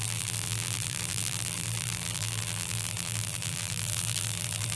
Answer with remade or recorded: remade